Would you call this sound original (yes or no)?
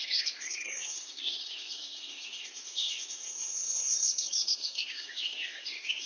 no